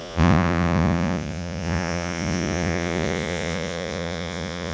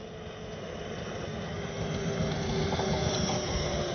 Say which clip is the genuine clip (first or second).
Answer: second